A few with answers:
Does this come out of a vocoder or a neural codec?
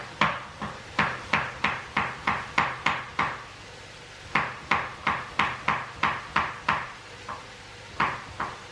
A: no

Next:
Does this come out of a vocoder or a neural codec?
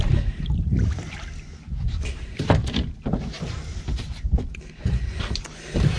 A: yes